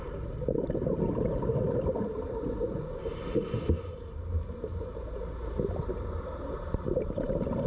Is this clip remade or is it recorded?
remade